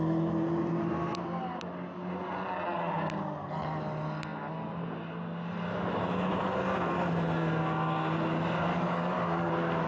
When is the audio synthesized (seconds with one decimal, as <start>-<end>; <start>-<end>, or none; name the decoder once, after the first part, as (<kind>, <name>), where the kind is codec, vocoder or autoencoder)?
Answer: 8.7-9.5 (codec, DAC)